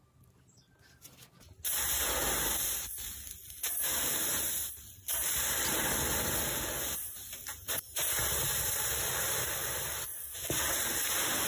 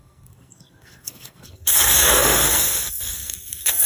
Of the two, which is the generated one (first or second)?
second